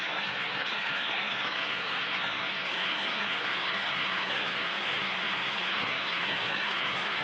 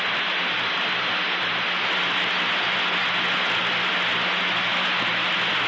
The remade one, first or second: first